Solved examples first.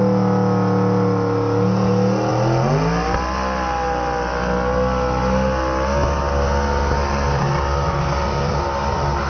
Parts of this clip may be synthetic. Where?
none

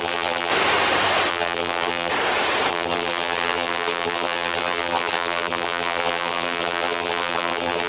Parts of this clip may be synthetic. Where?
0.0-0.5; 1.3-2.1; 2.7-7.9

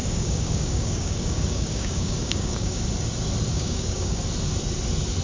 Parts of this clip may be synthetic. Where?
0.0-2.8; 3.5-4.2

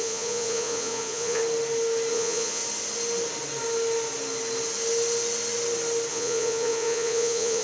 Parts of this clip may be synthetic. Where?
0.0-1.4; 2.1-2.6; 6.1-7.6

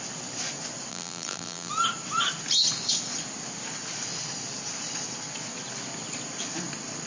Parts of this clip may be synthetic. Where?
0.9-1.7